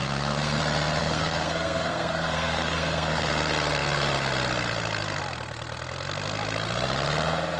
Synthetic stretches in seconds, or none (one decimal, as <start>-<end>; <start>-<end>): 0.0-0.6; 1.0-3.3